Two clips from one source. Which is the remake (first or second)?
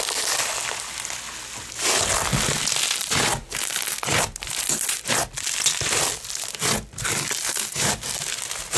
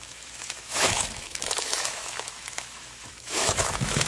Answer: second